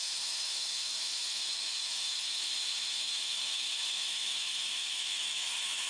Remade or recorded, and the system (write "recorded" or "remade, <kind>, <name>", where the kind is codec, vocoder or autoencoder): remade, autoencoder, DAC-VAE